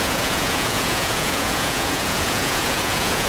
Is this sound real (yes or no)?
no